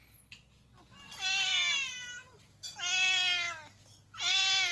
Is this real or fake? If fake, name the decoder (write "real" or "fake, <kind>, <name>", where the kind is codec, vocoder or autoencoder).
real